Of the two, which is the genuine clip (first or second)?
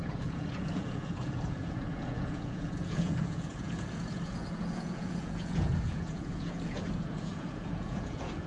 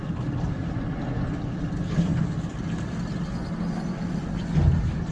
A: second